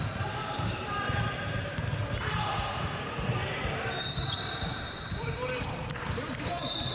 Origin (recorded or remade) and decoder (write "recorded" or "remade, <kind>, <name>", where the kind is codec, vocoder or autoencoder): remade, vocoder, BigVGAN v2